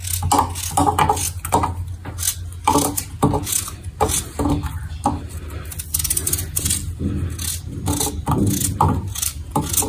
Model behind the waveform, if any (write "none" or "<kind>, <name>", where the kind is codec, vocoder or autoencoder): none